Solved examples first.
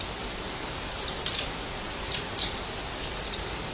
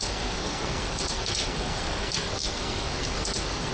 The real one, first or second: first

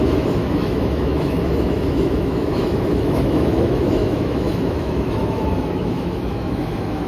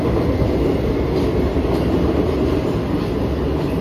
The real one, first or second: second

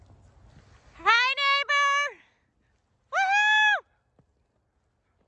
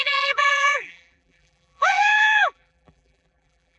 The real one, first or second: first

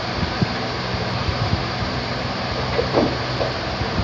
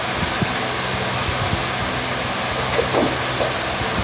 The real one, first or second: second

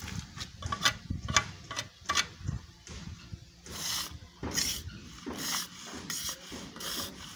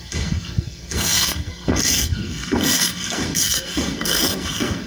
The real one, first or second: first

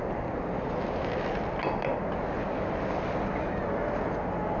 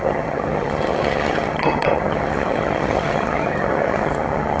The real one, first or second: first